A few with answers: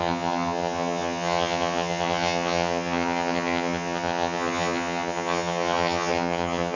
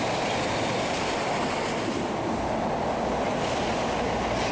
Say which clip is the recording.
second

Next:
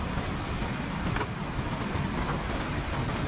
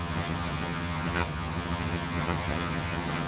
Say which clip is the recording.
first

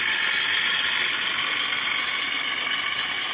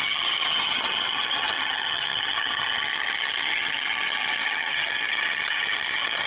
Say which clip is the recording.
first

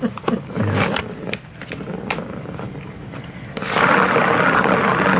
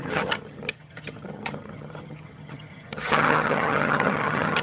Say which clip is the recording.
first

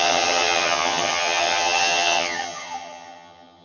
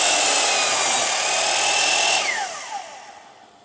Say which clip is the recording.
second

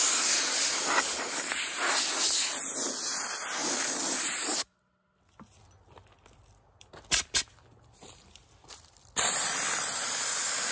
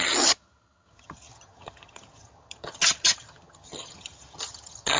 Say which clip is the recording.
first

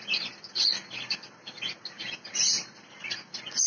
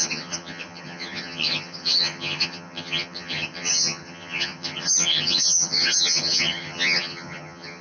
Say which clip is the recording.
first